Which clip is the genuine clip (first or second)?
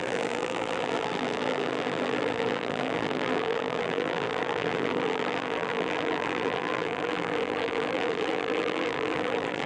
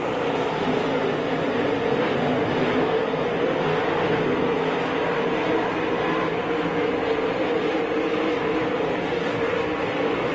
second